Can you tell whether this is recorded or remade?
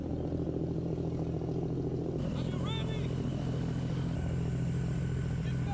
recorded